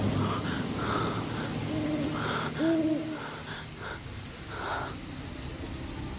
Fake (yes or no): no